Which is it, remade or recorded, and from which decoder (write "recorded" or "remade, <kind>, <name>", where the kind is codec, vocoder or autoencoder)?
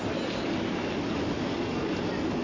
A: recorded